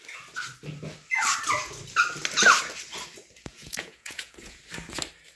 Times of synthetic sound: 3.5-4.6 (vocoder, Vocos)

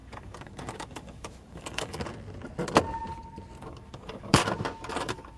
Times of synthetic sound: 0.0-2.1 (codec, DAC); 3.6-4.4; 4.9-5.4